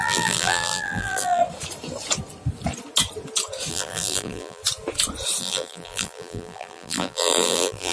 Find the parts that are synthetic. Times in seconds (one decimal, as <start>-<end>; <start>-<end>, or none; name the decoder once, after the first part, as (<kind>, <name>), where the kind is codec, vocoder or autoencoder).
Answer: 0.0-1.4 (vocoder, BigVGAN v2); 3.7-4.6; 5.4-7.9

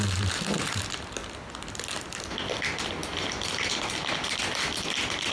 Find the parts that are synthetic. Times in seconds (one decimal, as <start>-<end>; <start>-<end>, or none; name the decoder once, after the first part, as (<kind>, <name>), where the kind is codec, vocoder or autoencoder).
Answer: none

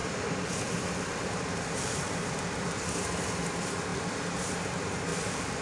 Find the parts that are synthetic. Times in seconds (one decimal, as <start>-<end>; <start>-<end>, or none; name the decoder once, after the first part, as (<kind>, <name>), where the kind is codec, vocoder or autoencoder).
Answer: 0.0-3.4 (vocoder, BigVGAN v2); 3.9-4.6; 5.1-5.6

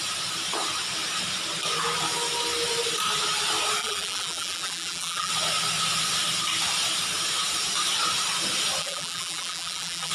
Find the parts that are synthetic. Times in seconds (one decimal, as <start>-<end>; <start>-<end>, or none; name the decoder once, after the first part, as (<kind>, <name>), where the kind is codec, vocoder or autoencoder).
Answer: 3.8-5.3 (vocoder, BigVGAN v2); 8.8-10.1